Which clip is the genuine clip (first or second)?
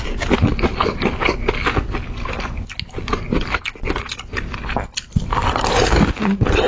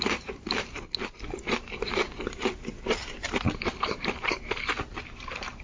first